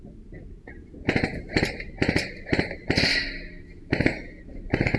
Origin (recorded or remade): recorded